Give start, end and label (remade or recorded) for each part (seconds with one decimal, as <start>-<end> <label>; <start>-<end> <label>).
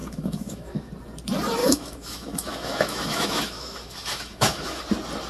0.0-0.9 remade; 0.9-1.6 recorded; 1.6-4.8 remade; 4.8-5.3 recorded